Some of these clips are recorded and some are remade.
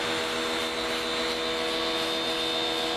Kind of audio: recorded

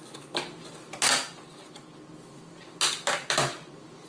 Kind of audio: recorded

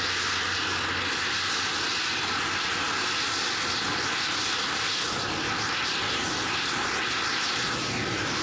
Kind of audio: recorded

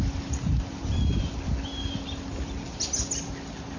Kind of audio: recorded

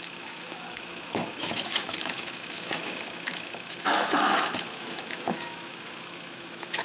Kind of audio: remade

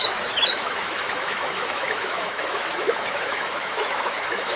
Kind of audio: remade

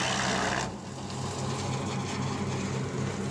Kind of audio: recorded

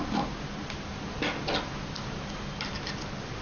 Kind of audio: recorded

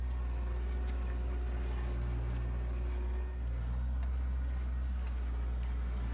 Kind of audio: recorded